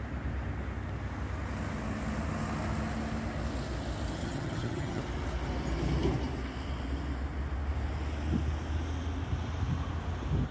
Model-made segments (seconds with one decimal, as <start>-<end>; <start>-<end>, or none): 4.2-5.0